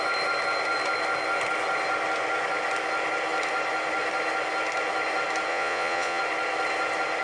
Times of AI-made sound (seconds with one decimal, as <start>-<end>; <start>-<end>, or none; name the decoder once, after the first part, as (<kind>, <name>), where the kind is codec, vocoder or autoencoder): 5.5-6.2 (vocoder, Vocos)